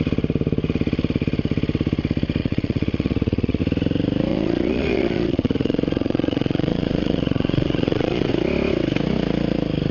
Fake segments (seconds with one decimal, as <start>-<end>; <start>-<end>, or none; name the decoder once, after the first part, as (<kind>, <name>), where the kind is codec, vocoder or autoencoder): 2.4-3.6 (vocoder, Vocos); 4.3-8.3